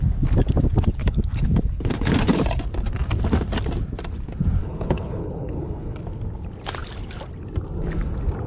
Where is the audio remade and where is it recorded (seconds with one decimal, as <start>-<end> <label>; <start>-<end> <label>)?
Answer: 0.0-1.0 recorded; 1.0-2.1 remade; 2.1-4.6 recorded; 4.6-6.0 remade; 6.0-8.5 recorded